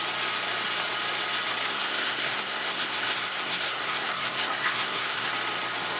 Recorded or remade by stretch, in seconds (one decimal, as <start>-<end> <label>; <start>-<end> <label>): 0.0-1.7 recorded; 1.7-5.3 remade; 5.3-6.0 recorded